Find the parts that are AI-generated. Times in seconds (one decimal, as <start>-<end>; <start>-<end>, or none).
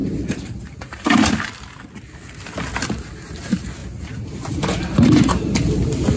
0.0-1.3; 3.8-5.4